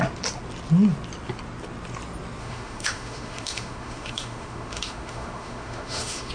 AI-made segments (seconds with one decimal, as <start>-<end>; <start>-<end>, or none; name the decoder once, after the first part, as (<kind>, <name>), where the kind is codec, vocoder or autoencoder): 2.4-6.3 (autoencoder, DAC-VAE)